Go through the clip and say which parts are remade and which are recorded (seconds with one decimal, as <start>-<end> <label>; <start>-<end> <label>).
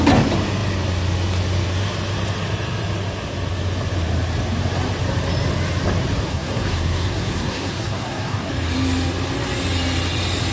0.0-6.3 recorded; 6.3-8.5 remade; 8.5-10.5 recorded